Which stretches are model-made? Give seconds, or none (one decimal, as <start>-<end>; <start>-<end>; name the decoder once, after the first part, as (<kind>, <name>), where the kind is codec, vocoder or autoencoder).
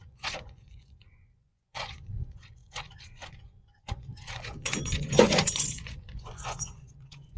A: 0.0-7.4 (vocoder, Vocos)